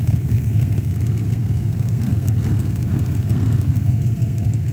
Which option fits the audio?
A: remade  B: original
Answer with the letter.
A